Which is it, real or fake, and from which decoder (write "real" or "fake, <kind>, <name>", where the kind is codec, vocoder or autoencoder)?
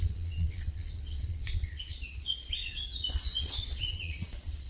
fake, vocoder, Vocos